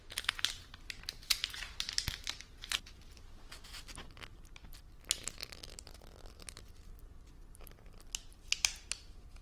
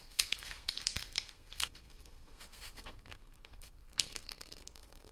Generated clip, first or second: second